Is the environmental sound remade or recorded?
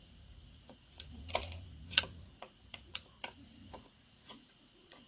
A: remade